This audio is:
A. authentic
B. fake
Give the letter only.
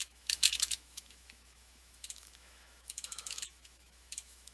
B